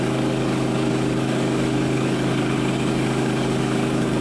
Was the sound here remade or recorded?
remade